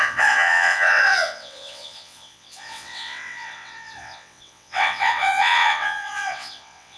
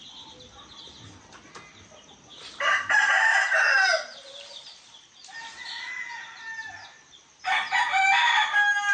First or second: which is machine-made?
first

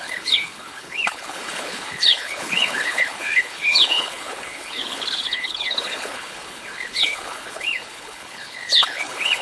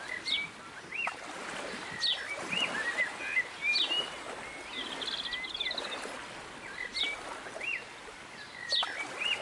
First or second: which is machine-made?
first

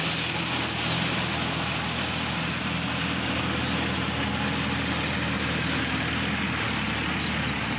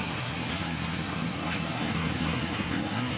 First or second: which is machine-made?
second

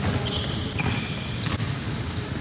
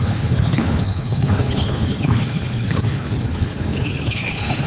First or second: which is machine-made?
second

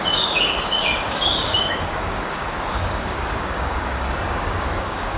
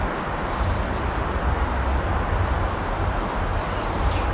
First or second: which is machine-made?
first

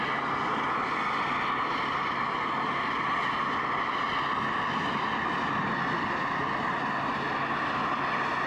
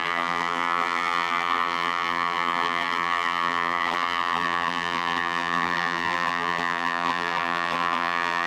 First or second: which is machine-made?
second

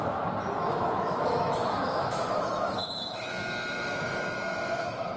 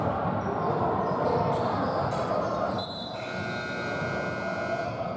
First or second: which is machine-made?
first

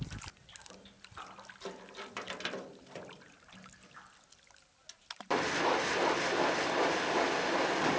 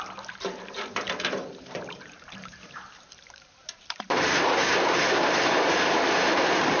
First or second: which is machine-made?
second